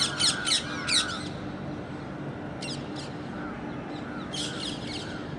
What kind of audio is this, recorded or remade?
recorded